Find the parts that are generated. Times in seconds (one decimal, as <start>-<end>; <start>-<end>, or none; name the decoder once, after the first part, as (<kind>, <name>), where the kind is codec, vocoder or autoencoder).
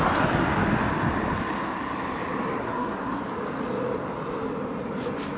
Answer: 2.6-3.2 (codec, SNAC)